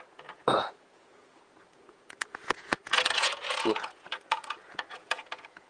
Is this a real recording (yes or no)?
no